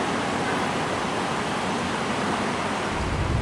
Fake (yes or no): no